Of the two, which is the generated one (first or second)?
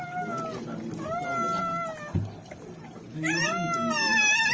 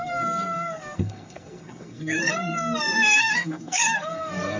second